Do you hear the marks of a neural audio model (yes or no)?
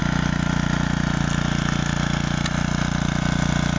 no